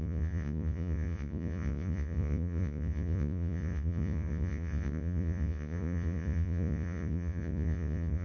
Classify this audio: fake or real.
fake